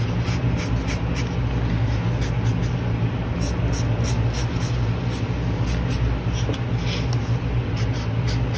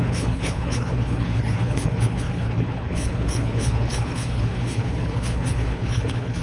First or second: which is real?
first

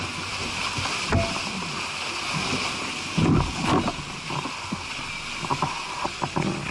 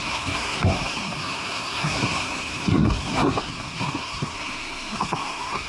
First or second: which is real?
first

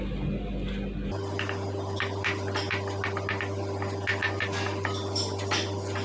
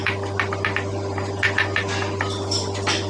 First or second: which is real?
first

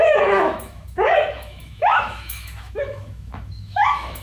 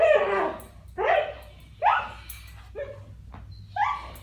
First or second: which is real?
second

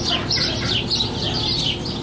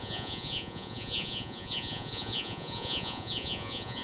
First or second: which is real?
first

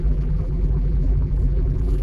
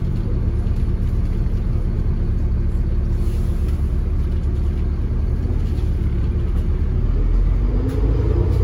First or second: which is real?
second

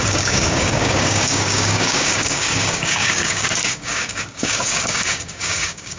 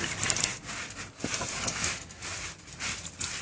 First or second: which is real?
second